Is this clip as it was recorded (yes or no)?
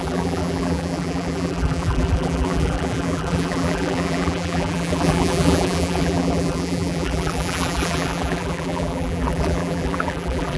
no